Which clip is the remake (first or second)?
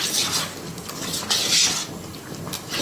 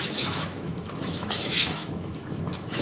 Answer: second